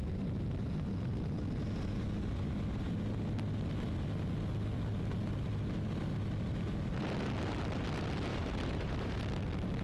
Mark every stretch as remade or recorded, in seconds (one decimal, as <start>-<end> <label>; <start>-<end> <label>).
0.0-8.3 recorded; 8.3-9.2 remade; 9.2-9.8 recorded